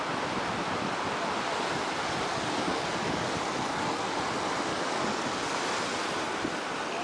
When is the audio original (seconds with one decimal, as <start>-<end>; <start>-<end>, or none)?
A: 0.0-2.3; 4.1-4.7; 5.5-7.0